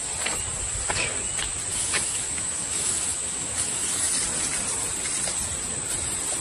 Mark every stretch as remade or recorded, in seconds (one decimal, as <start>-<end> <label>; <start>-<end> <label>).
0.0-1.7 recorded; 1.7-4.1 remade; 4.1-6.4 recorded